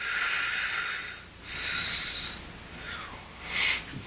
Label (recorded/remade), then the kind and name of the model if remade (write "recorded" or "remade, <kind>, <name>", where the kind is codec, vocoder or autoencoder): recorded